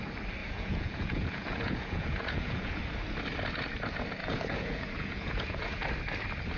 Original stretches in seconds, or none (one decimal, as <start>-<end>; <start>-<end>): 0.0-0.4; 2.8-4.2; 5.9-6.6